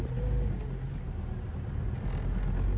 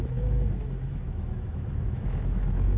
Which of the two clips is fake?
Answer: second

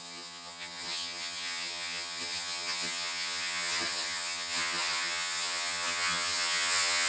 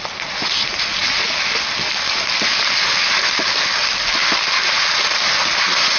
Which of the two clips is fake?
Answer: first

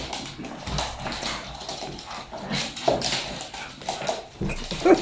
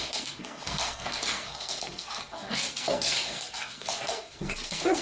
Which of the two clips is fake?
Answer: second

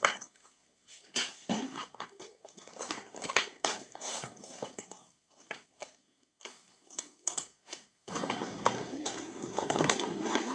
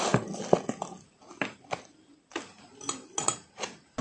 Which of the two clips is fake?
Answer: first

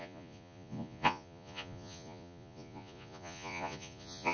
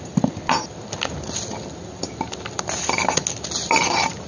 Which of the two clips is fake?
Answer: first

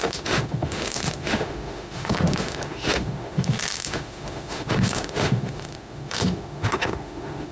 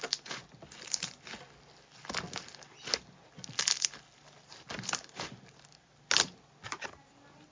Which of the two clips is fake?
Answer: first